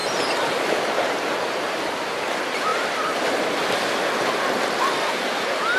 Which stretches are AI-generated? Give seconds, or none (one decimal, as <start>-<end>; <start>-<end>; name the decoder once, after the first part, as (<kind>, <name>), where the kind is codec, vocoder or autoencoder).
2.7-5.8 (vocoder, BigVGAN v2)